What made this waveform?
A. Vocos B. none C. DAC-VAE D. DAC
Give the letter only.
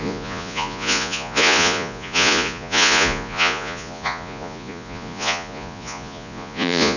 A